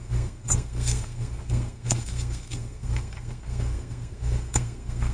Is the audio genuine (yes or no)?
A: no